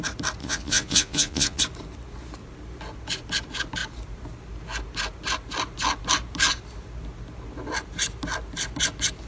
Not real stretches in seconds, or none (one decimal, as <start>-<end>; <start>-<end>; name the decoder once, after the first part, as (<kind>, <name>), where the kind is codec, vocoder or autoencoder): 0.4-1.6 (vocoder, Vocos)